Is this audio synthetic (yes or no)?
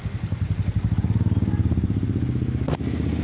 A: no